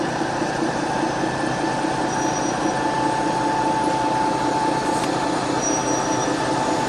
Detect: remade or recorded recorded